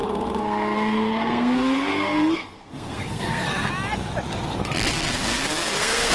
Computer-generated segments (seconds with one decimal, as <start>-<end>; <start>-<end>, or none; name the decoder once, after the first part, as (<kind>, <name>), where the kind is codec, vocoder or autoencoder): 0.0-3.7 (codec, SNAC); 4.9-6.1